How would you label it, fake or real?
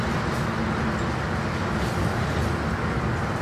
real